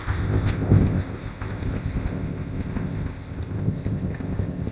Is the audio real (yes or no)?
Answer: no